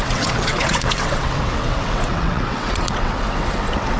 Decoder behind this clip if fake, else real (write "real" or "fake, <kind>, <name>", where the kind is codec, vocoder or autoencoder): fake, vocoder, WaveNeXt